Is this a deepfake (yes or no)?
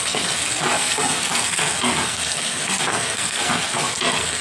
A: yes